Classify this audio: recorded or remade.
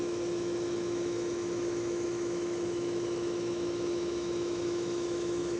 remade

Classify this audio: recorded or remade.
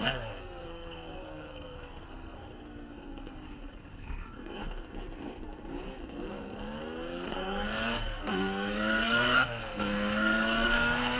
remade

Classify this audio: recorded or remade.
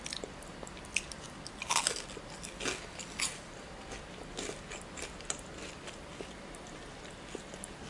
recorded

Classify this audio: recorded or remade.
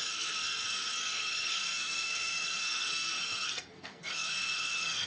remade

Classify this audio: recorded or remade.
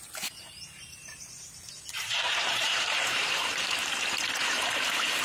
remade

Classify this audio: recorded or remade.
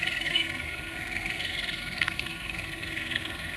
remade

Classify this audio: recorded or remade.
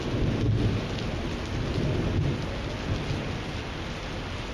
recorded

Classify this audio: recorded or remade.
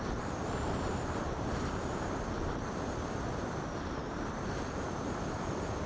remade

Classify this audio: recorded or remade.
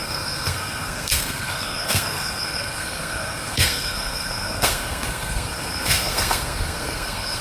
remade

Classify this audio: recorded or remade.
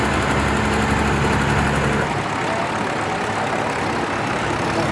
recorded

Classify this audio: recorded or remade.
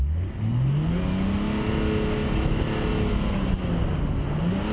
recorded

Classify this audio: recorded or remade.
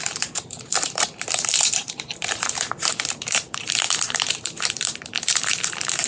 remade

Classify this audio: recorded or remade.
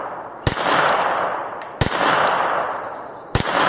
recorded